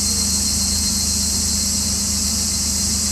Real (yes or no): yes